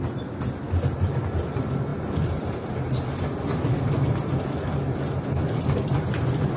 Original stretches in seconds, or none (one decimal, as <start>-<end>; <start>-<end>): 0.0-6.6